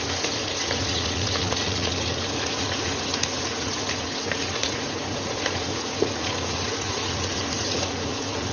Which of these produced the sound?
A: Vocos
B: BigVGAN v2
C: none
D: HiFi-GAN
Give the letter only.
A